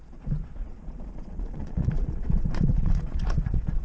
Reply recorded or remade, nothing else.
remade